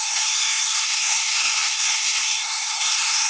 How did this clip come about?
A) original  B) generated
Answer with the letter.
B